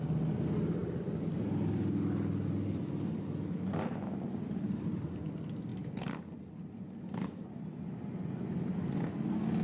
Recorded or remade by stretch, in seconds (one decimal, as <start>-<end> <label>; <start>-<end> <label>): 0.0-9.6 recorded